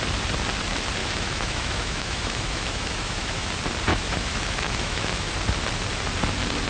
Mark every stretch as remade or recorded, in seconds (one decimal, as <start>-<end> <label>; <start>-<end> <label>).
0.0-1.0 recorded; 1.0-3.5 remade; 3.5-3.9 recorded; 3.9-5.3 remade; 5.3-6.7 recorded